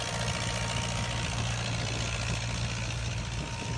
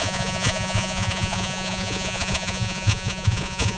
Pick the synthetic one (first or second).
second